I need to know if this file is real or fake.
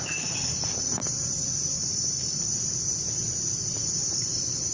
real